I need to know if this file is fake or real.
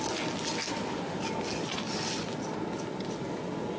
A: real